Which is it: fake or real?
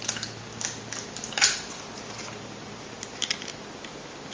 real